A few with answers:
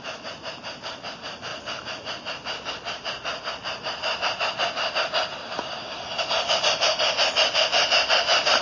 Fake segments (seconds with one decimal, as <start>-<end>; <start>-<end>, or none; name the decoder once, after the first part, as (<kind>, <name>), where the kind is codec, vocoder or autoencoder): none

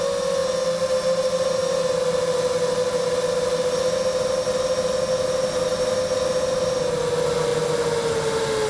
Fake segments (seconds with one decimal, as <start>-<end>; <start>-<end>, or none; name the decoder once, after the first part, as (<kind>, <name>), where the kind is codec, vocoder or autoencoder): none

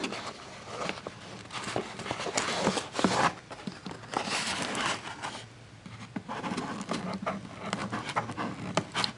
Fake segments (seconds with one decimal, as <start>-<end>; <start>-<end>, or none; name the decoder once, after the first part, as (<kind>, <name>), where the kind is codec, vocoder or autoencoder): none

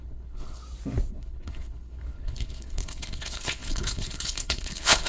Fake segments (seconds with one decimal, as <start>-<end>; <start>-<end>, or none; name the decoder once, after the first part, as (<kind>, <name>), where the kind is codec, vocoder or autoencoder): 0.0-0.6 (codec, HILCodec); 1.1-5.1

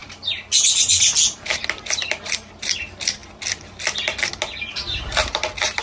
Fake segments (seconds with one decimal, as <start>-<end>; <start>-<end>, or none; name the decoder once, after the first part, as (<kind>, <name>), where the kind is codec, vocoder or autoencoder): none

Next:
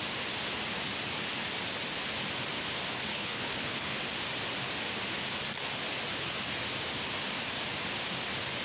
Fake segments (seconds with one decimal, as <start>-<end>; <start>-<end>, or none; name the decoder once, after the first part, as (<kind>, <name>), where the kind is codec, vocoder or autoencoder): 3.1-4.0 (codec, HILCodec)